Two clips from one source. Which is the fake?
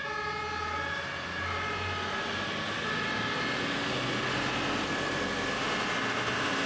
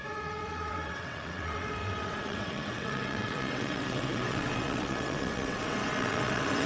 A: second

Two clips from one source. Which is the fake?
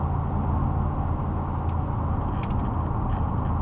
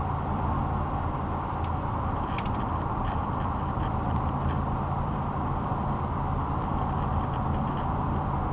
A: second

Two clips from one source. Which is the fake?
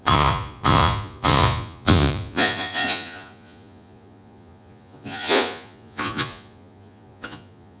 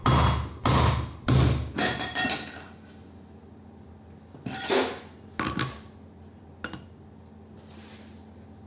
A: first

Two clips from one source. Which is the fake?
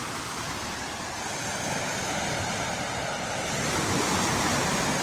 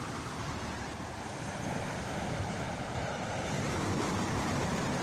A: second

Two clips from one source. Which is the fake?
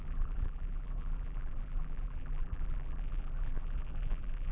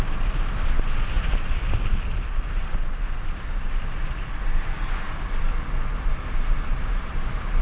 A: first